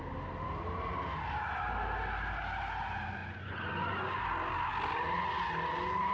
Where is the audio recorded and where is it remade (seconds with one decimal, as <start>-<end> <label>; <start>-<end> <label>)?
0.0-3.2 recorded; 3.2-4.2 remade; 4.2-6.1 recorded